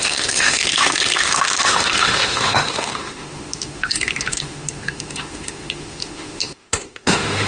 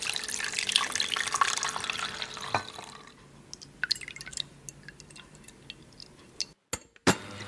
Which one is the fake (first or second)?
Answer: first